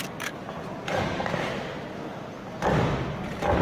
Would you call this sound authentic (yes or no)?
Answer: yes